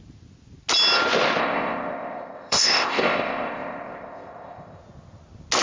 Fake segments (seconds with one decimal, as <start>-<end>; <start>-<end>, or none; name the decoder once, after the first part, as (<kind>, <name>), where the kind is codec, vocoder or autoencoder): 1.4-4.8 (codec, ZipCodec)